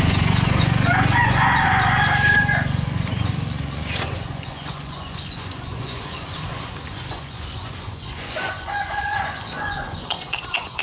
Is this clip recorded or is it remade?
remade